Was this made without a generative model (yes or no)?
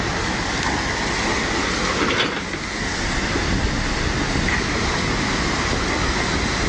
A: yes